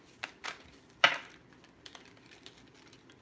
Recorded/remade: recorded